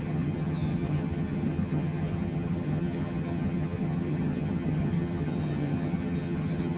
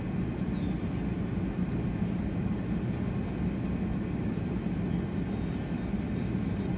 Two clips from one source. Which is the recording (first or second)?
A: second